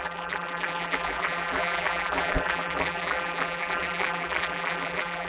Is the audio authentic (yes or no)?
no